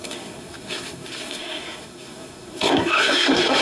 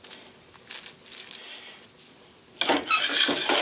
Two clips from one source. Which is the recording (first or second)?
second